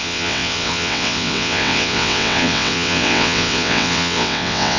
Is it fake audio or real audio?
fake